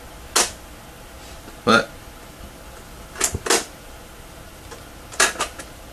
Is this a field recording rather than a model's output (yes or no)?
yes